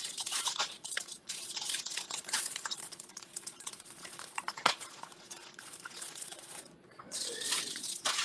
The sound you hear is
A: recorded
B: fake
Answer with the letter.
B